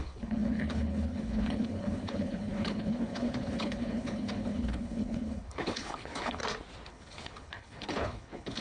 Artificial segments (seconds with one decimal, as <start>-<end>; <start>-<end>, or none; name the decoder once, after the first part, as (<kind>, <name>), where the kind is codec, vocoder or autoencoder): 0.0-6.4 (codec, HILCodec); 6.9-8.6